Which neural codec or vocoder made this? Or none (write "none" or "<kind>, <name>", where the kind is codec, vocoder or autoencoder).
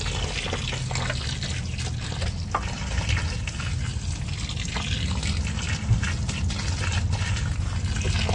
none